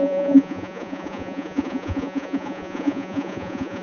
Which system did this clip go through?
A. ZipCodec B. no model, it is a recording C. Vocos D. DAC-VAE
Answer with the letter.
C